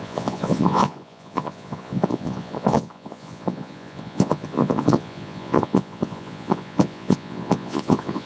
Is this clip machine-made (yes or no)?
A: yes